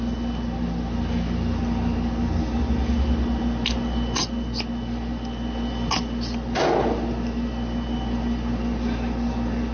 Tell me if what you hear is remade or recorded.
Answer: recorded